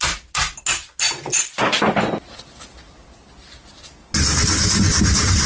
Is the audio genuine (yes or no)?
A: yes